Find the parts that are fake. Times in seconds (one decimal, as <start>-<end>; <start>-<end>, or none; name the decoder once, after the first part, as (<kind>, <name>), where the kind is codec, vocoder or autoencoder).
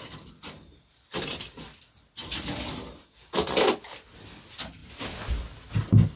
none